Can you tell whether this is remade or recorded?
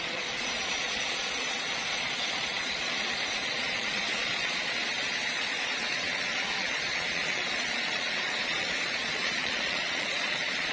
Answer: remade